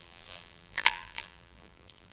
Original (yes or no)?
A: no